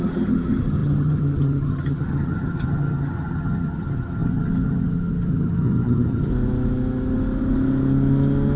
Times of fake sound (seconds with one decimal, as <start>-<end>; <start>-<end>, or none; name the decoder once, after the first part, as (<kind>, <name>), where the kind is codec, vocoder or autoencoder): 0.0-6.3 (vocoder, HiFi-GAN)